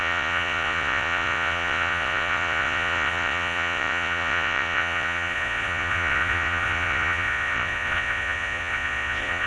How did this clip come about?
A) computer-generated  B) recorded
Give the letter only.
A